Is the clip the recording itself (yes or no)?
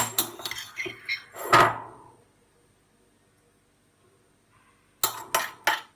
yes